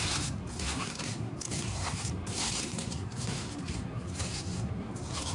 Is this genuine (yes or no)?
no